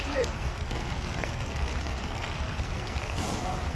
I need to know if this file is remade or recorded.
remade